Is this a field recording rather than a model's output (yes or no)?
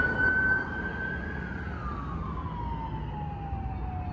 yes